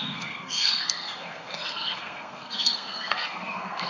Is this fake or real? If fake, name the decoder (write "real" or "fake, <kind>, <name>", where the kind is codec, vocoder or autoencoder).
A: fake, codec, SNAC